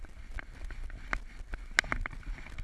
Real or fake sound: real